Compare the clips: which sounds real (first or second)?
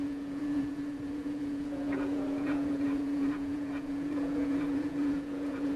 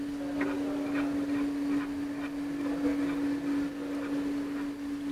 second